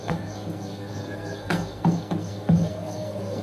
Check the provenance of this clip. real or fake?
fake